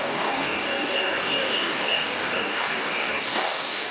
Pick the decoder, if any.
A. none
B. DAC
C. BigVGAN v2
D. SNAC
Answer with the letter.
B